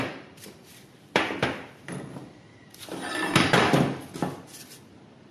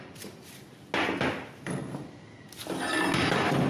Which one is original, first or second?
second